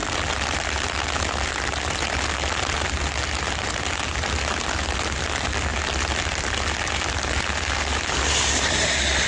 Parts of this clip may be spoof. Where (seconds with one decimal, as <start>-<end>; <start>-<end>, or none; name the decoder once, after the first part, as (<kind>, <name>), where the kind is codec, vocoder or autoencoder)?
none